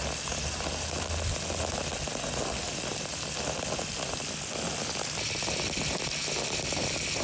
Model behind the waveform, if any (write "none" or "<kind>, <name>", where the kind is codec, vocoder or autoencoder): none